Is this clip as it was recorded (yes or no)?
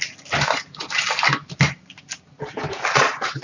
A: yes